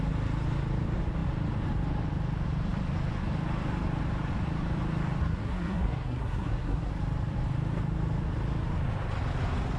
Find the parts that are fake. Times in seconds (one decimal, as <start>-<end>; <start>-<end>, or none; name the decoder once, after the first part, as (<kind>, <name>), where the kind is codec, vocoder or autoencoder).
5.2-6.9 (codec, SNAC)